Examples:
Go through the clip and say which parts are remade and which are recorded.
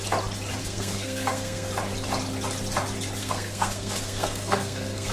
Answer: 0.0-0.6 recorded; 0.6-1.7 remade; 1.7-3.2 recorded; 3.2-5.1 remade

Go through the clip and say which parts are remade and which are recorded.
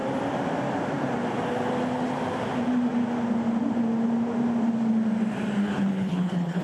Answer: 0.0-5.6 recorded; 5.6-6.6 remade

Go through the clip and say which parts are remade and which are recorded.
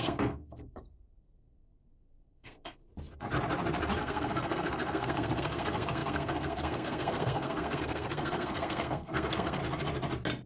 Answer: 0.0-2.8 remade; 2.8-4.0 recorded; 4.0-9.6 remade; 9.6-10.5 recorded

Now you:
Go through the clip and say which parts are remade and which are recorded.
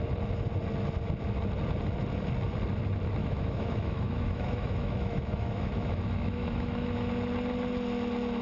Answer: 0.0-3.2 recorded; 3.2-7.1 remade; 7.1-8.4 recorded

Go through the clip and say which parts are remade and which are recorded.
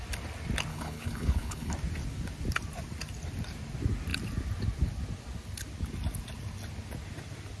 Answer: 0.0-0.7 recorded; 0.7-1.7 remade; 1.7-7.6 recorded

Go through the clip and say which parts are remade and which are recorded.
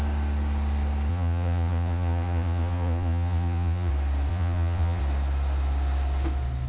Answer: 0.0-1.1 recorded; 1.1-3.9 remade; 3.9-4.3 recorded; 4.3-5.0 remade; 5.0-6.7 recorded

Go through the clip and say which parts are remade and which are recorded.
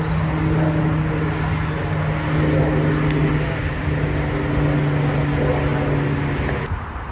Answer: 0.0-7.1 recorded